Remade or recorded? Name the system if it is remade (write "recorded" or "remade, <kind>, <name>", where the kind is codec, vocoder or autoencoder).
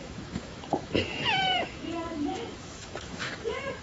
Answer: remade, autoencoder, DAC-VAE